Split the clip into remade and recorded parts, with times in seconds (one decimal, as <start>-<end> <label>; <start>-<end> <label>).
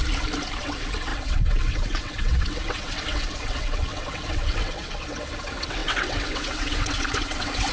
0.0-0.6 recorded; 0.6-7.7 remade